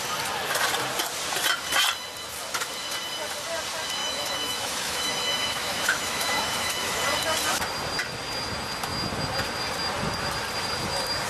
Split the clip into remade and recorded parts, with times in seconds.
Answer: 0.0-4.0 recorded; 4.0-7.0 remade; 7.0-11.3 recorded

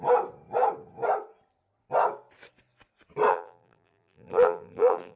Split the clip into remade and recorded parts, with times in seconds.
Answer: 0.0-3.3 recorded; 3.3-5.2 remade

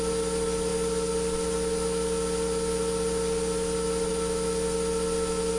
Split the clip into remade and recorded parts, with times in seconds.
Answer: 0.0-5.6 recorded